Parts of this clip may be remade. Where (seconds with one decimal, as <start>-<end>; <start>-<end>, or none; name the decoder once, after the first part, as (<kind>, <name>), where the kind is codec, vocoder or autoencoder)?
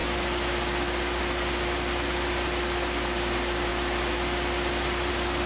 none